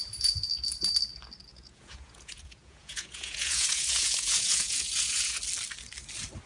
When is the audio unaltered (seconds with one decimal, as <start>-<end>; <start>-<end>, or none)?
0.0-1.5; 5.4-6.5